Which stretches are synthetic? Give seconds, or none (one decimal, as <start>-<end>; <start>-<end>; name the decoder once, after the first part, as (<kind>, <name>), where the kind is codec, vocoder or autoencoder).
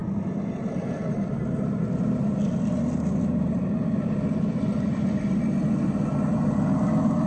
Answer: 1.4-2.0 (vocoder, BigVGAN v2)